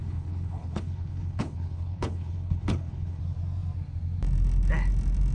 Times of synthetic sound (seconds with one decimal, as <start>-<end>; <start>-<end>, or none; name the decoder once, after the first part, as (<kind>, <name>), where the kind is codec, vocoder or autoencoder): 0.0-3.2 (codec, HILCodec)